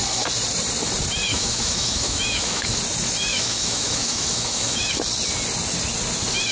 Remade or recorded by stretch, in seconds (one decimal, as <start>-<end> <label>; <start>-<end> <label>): 0.0-1.3 recorded; 1.3-2.8 remade; 2.8-3.3 recorded; 3.3-4.9 remade; 4.9-6.5 recorded